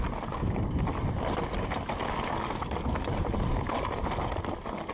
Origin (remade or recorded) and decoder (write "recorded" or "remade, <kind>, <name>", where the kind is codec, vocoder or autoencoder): recorded